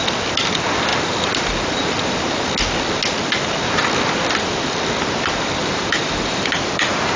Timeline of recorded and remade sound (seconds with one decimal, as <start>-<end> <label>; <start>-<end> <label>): 0.0-5.6 recorded; 5.6-7.2 remade